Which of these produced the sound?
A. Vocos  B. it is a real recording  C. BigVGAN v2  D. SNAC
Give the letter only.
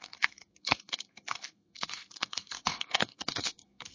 D